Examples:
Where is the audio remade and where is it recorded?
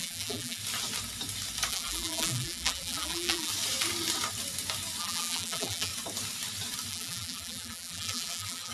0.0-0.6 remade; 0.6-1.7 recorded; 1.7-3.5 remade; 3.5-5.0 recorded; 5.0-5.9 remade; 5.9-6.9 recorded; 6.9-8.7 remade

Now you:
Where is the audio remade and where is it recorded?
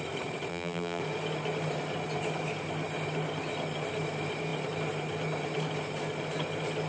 0.0-0.5 recorded; 0.5-1.0 remade; 1.0-6.9 recorded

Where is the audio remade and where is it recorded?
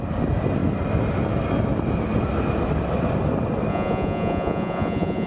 0.0-3.7 recorded; 3.7-5.3 remade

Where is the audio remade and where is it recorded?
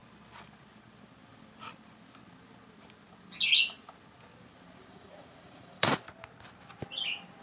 0.0-4.9 recorded; 4.9-6.0 remade; 6.0-7.4 recorded